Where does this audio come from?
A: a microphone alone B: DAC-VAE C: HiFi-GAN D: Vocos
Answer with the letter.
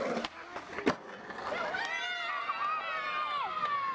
A